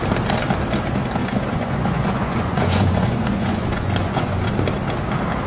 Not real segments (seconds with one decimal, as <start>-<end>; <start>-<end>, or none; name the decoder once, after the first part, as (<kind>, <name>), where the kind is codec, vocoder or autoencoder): 1.2-4.5 (vocoder, Vocos)